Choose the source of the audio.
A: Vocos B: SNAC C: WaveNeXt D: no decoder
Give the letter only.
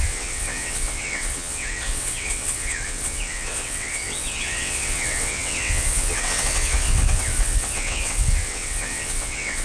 C